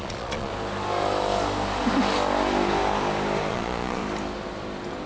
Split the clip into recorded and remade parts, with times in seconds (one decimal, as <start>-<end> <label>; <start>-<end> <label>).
0.0-0.5 remade; 0.5-3.5 recorded; 3.5-4.0 remade; 4.0-5.1 recorded